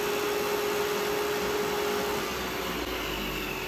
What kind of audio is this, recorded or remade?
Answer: recorded